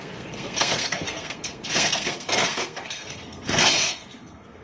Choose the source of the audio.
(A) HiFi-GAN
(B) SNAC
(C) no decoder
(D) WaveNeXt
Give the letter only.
B